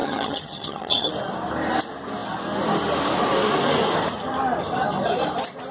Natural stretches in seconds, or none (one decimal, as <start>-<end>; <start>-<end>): 1.1-5.7